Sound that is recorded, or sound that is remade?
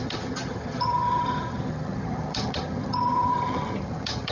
remade